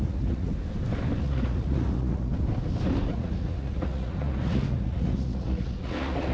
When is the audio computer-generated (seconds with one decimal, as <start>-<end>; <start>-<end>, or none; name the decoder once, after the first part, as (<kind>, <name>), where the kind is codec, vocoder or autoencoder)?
0.0-0.5 (vocoder, Vocos); 1.2-2.3; 3.1-6.3